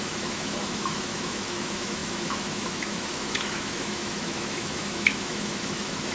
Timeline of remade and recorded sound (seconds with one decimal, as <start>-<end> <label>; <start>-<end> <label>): 0.0-6.1 remade